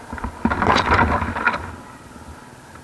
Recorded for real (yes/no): yes